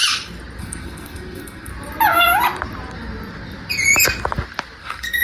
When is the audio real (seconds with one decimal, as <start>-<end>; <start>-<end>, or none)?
0.0-0.6; 1.7-4.8

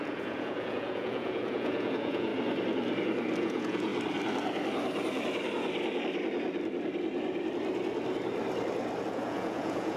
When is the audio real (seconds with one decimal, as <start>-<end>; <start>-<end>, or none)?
2.3-3.4; 3.9-9.1

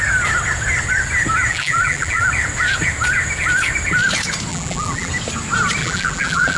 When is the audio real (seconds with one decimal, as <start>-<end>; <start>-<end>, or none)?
0.0-1.5; 2.3-4.5; 5.1-5.8

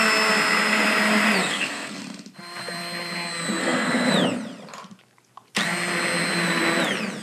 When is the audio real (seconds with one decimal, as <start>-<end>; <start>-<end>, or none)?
0.0-1.4; 2.0-3.6; 4.1-7.2

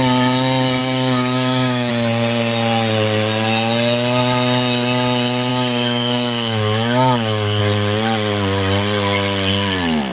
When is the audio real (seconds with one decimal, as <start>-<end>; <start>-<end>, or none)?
0.0-0.8; 1.9-5.5; 7.6-10.1

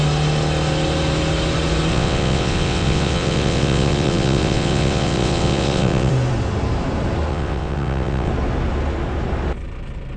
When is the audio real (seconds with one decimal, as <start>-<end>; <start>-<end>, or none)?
0.0-1.9; 6.1-7.3; 8.3-10.2

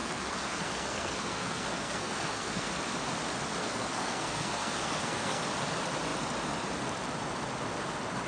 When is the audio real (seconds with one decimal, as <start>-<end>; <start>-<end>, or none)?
2.7-3.6; 5.5-8.3

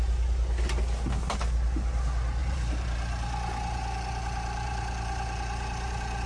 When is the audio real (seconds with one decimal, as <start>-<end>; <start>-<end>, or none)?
0.0-2.4